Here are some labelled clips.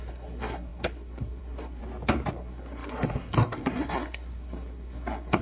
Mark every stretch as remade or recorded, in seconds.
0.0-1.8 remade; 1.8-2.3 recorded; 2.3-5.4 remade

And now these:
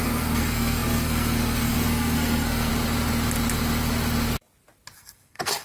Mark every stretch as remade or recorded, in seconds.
0.0-2.7 remade; 2.7-5.0 recorded; 5.0-5.6 remade

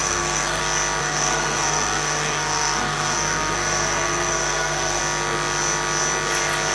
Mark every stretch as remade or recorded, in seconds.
0.0-0.6 remade; 0.6-1.0 recorded; 1.0-5.0 remade; 5.0-6.7 recorded

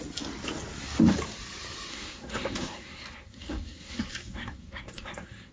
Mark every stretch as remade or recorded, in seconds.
0.0-1.9 recorded; 1.9-5.5 remade

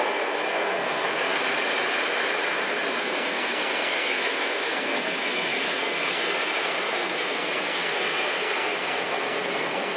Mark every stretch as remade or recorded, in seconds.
0.0-1.3 remade; 1.3-3.0 recorded; 3.0-10.0 remade